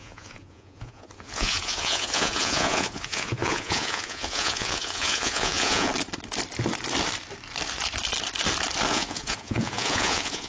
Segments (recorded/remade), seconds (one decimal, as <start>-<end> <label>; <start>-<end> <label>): 0.0-5.9 remade; 5.9-8.9 recorded; 8.9-10.5 remade

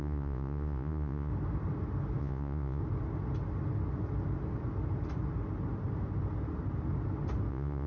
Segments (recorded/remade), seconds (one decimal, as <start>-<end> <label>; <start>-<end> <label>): 0.0-1.3 remade; 1.3-2.2 recorded; 2.2-2.8 remade; 2.8-7.5 recorded; 7.5-7.9 remade

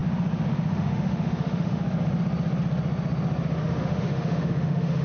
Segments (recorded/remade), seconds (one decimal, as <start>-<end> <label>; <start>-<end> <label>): 0.0-0.5 recorded; 0.5-1.8 remade; 1.8-3.6 recorded; 3.6-5.0 remade